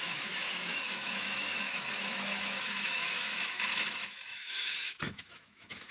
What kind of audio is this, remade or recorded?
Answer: remade